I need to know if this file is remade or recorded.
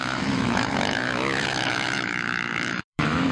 remade